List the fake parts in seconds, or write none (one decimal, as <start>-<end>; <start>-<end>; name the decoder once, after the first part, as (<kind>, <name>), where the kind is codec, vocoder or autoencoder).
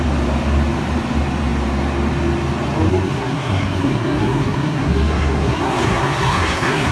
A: 2.9-6.9 (codec, SNAC)